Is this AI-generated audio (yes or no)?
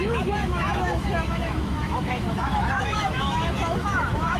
yes